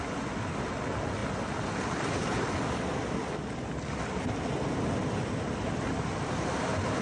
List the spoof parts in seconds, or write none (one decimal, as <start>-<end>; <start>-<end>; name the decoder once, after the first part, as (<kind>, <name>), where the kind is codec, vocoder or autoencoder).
none